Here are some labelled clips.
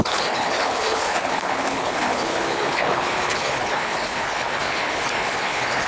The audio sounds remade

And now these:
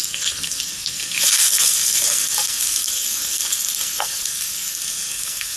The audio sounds remade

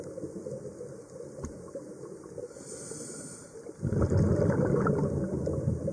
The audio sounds recorded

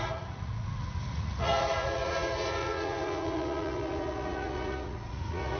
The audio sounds remade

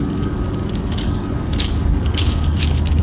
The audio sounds remade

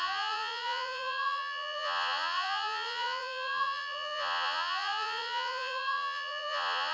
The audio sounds remade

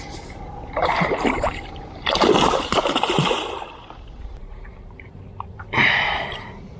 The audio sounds remade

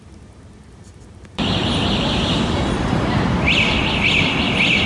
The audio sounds remade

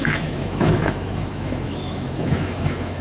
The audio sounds remade